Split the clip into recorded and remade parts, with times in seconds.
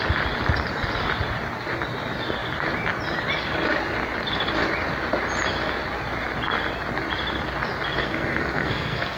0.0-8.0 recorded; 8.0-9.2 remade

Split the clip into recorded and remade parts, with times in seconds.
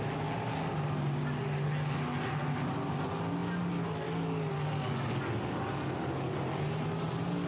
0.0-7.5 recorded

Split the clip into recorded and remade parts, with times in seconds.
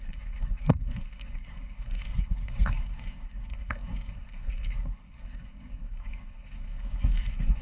0.0-7.6 remade